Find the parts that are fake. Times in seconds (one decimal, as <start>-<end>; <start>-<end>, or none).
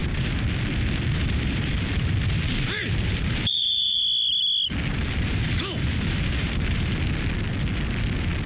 0.0-4.0; 4.9-6.9